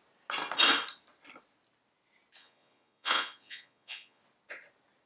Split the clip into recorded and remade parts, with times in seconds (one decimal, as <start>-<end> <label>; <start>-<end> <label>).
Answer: 0.0-2.4 recorded; 2.4-4.2 remade; 4.2-5.1 recorded